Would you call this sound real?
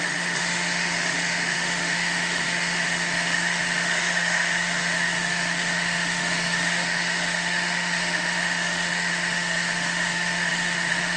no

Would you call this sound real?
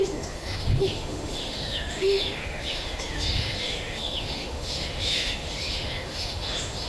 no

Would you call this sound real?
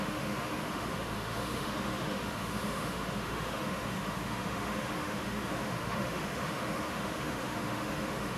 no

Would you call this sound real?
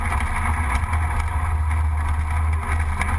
yes